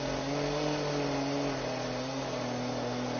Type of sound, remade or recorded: recorded